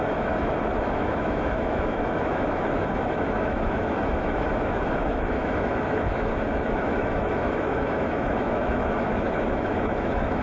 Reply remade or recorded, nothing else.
remade